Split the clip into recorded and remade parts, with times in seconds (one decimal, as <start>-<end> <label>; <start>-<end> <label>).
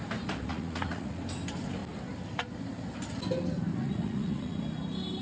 0.0-0.5 recorded; 0.5-1.2 remade; 1.2-3.7 recorded; 3.7-4.6 remade; 4.6-5.2 recorded